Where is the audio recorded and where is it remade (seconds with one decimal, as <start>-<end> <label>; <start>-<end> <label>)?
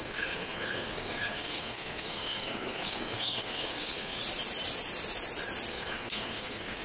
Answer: 0.0-4.2 remade; 4.2-5.7 recorded; 5.7-6.8 remade